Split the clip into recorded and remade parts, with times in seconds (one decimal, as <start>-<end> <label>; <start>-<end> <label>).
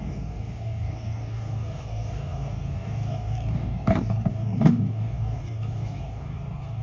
0.0-6.8 remade